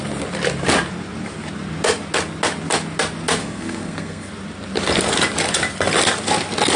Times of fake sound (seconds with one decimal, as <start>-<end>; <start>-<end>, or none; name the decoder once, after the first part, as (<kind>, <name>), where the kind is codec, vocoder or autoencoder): 3.4-4.3 (codec, SNAC)